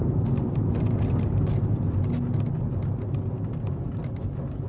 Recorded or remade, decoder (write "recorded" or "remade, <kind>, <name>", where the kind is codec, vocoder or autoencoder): recorded